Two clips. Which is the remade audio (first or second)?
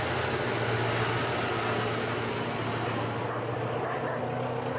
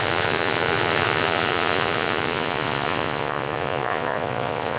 second